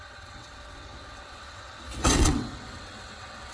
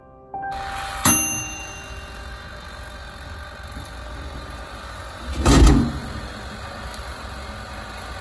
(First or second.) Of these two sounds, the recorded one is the second